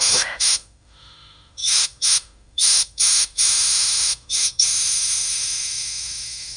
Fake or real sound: fake